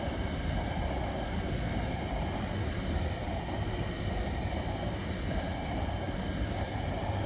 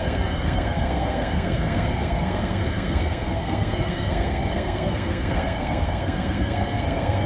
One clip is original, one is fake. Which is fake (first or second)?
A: second